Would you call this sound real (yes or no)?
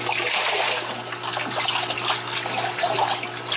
yes